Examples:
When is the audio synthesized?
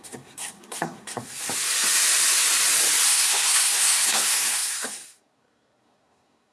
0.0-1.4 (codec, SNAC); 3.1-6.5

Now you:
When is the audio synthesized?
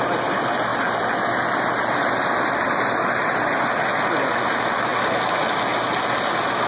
none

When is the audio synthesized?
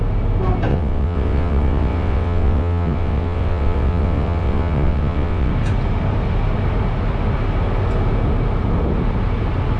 0.7-5.5 (vocoder, WaveNeXt)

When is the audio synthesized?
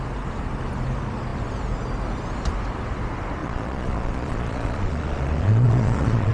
3.4-6.3 (vocoder, Vocos)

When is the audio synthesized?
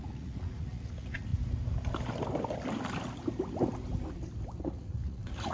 0.0-1.3 (vocoder, Vocos); 4.6-5.5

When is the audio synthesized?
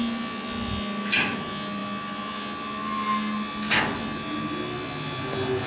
none